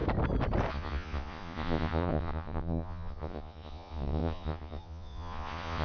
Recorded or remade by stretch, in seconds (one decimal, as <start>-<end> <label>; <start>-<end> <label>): 0.0-0.7 recorded; 0.7-5.8 remade

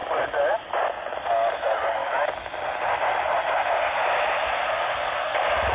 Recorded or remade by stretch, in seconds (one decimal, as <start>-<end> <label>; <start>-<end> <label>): 0.0-5.7 recorded